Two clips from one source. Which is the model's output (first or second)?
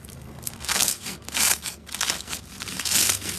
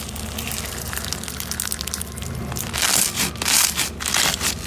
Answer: first